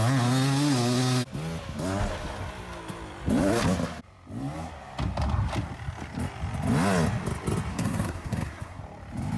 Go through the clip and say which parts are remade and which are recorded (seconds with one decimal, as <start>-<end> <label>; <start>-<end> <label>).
0.0-7.7 recorded; 7.7-8.8 remade; 8.8-9.4 recorded